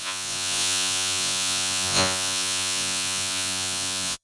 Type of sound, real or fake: fake